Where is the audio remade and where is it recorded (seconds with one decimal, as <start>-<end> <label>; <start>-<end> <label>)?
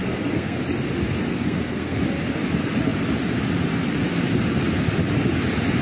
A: 0.0-0.6 remade; 0.6-1.3 recorded; 1.3-2.0 remade; 2.0-5.8 recorded